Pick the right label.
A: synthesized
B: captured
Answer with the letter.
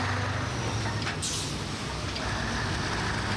B